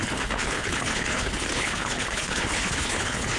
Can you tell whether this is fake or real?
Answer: fake